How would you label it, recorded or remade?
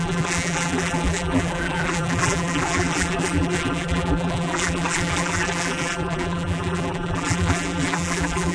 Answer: remade